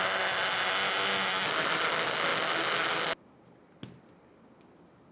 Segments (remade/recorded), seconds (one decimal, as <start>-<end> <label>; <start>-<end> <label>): 0.0-5.1 recorded